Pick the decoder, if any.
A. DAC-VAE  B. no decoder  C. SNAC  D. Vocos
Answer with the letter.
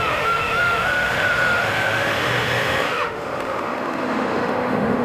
A